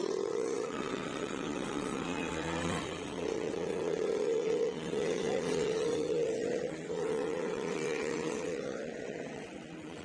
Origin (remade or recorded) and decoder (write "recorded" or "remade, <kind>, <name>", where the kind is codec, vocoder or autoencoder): remade, vocoder, WaveNeXt